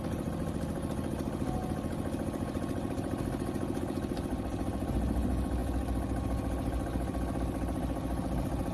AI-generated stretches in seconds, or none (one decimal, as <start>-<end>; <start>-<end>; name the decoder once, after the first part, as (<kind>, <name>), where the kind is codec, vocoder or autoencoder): none